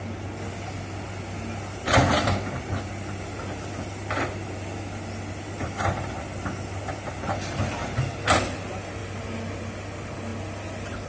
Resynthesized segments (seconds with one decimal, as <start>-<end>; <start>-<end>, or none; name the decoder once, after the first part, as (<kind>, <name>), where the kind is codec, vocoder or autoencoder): none